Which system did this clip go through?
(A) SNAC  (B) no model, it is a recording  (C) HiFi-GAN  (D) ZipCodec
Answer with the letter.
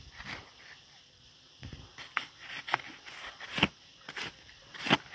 B